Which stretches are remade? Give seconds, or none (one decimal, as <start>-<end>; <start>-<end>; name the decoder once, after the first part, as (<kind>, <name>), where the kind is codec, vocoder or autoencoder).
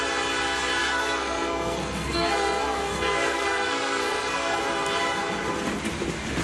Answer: 0.8-4.6 (codec, SNAC)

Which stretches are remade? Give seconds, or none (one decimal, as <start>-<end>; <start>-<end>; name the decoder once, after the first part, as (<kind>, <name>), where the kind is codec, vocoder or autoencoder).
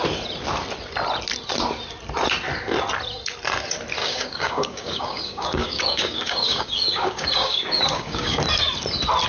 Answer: 4.0-8.4 (codec, DAC)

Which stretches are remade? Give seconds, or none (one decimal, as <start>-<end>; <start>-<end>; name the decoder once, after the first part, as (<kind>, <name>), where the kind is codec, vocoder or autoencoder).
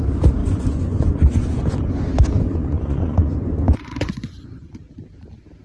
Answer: 0.4-1.7 (vocoder, Vocos); 2.5-4.8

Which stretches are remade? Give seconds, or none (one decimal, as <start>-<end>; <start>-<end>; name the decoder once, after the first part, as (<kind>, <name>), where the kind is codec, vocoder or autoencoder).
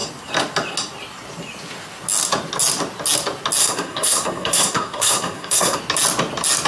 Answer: 3.6-5.8 (codec, SNAC)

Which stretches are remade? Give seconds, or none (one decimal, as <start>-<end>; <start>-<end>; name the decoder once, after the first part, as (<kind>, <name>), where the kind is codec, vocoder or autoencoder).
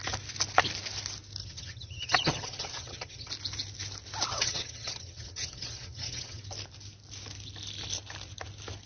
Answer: 1.4-3.3 (vocoder, HiFi-GAN); 4.3-6.4